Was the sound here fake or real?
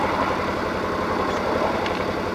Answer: real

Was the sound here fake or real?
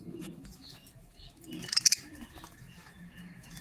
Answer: fake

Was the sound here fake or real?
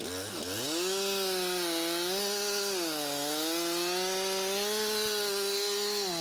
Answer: real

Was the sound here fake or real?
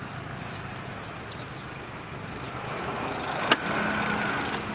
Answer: real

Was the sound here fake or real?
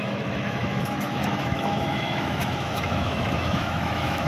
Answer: fake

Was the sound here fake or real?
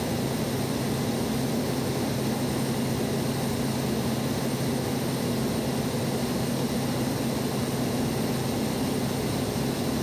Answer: real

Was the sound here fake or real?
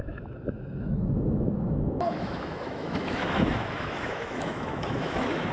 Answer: fake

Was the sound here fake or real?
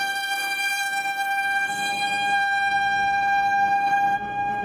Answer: fake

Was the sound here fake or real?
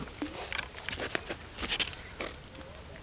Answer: real